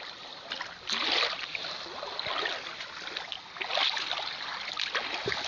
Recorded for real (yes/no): yes